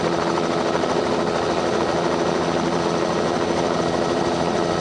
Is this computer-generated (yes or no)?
no